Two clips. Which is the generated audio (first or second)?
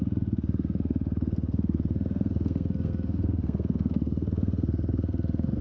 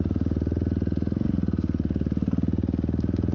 first